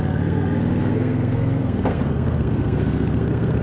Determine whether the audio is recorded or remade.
remade